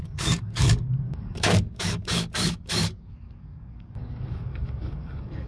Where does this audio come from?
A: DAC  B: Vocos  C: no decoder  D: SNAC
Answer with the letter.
A